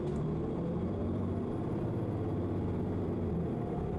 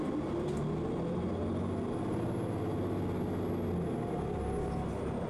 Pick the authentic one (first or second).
second